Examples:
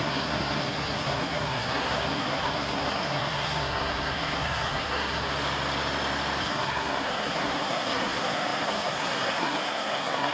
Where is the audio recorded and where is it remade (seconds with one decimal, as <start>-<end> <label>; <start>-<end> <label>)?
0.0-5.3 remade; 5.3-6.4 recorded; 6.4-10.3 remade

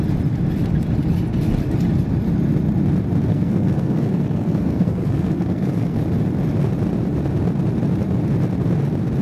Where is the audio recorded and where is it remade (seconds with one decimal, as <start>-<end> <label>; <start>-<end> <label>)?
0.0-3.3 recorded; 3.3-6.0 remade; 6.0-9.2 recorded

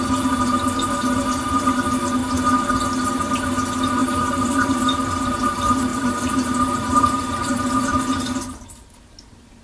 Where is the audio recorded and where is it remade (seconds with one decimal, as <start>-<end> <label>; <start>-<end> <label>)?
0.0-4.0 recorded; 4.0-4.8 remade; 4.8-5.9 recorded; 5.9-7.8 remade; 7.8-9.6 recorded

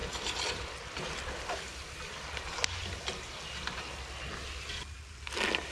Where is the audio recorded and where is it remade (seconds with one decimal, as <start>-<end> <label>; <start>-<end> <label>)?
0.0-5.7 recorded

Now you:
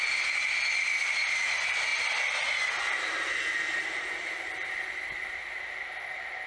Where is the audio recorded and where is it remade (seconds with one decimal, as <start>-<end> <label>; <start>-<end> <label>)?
0.0-6.5 recorded

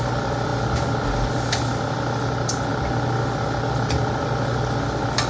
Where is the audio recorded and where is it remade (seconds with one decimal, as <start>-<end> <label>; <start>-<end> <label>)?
0.0-5.3 recorded

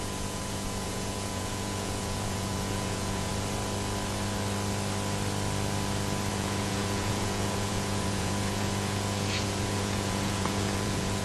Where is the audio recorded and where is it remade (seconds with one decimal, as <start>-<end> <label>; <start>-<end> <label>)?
0.0-3.3 remade; 3.3-6.3 recorded; 6.3-11.2 remade

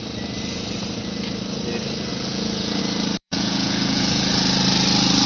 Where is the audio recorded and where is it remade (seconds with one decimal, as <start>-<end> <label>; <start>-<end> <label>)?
0.0-2.1 recorded; 2.1-2.8 remade; 2.8-3.2 recorded; 3.2-4.3 remade; 4.3-5.3 recorded